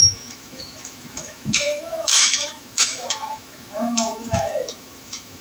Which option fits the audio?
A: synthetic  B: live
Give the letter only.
A